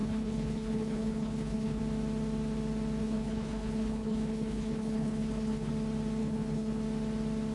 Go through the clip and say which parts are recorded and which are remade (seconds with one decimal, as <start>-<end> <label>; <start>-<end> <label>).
0.0-1.8 remade; 1.8-3.0 recorded; 3.0-5.7 remade; 5.7-6.2 recorded; 6.2-6.8 remade; 6.8-7.5 recorded